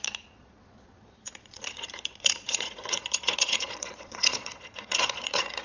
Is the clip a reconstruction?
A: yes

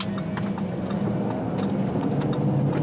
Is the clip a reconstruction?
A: no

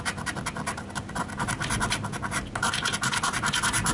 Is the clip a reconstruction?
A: no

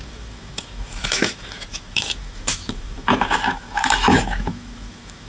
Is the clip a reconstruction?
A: yes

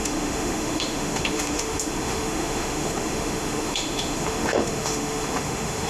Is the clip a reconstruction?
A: yes